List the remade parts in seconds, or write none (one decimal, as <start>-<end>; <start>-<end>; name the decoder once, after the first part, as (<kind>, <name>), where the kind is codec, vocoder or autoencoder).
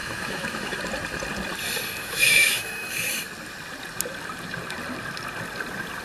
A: 0.0-0.8 (autoencoder, DAC-VAE); 2.0-3.3